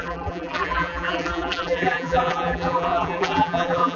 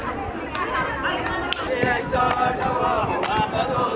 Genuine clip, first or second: second